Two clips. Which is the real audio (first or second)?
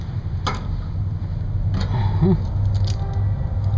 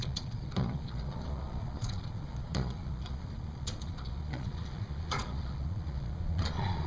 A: first